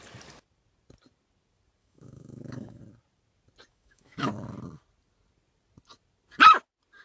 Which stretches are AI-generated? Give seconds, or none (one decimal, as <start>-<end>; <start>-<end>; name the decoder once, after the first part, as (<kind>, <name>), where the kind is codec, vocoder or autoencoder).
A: 1.8-2.8 (autoencoder, DAC-VAE); 3.7-4.3